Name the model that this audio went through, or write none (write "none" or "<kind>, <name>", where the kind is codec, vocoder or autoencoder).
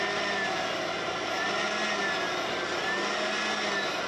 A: none